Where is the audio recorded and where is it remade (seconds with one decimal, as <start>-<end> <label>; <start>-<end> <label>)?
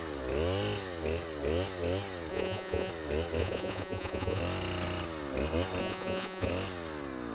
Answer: 0.0-2.3 recorded; 2.3-2.9 remade; 2.9-3.4 recorded; 3.4-4.4 remade; 4.4-5.8 recorded; 5.8-6.5 remade; 6.5-7.3 recorded